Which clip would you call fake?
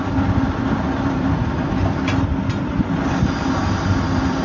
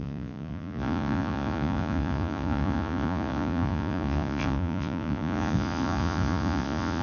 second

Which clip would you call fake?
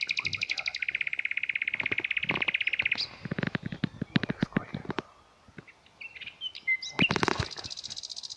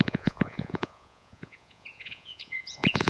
second